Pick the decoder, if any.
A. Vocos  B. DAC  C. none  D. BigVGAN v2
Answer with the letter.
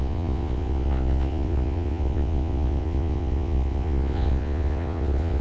A